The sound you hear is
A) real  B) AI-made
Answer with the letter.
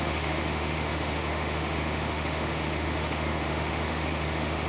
B